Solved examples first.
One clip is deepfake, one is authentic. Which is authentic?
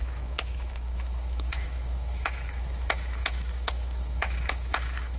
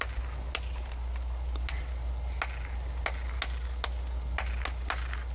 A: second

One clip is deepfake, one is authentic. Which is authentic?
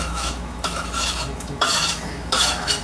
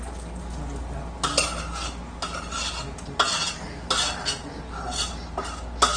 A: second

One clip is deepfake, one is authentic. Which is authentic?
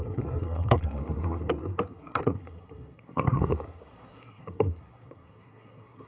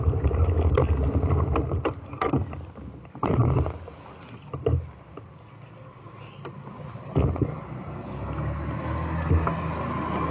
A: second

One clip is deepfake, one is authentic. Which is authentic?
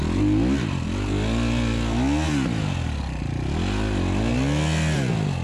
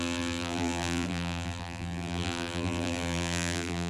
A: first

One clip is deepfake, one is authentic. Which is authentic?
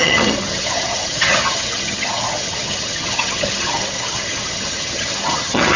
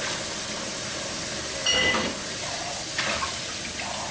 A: second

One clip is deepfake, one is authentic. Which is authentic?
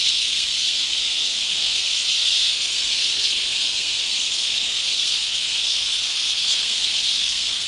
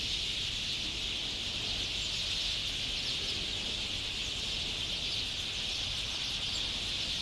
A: second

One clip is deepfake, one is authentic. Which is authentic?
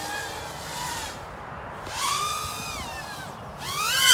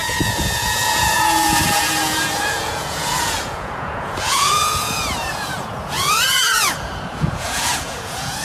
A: first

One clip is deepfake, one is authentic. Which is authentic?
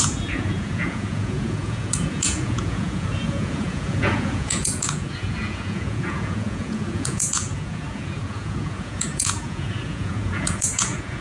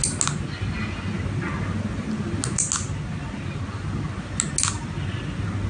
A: second